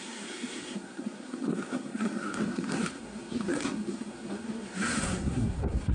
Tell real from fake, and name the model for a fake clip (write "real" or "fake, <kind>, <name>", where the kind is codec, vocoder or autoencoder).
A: fake, codec, SNAC